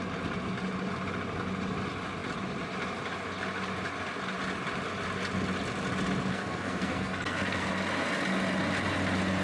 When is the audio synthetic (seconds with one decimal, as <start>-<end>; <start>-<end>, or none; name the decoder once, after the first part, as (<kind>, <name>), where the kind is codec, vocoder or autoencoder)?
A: 6.3-7.7 (codec, SNAC)